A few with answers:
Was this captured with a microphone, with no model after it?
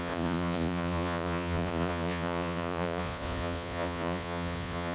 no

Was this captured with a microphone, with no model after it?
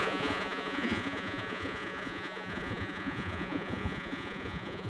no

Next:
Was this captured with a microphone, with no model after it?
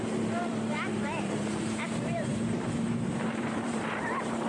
no